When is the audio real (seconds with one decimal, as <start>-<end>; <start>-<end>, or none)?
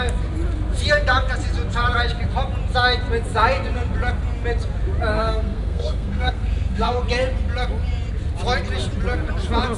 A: 0.0-5.1; 7.0-9.8